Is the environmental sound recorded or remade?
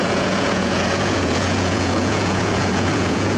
remade